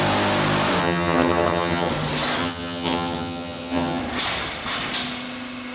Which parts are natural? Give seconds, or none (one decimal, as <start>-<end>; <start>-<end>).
0.0-0.8; 1.9-2.4; 4.0-5.7